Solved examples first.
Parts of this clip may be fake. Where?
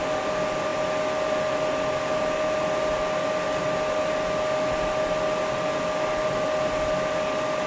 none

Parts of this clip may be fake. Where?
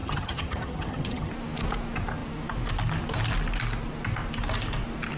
0.0-1.3 (vocoder, HiFi-GAN)